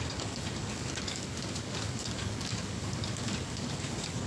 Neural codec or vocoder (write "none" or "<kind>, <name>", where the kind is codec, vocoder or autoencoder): codec, DAC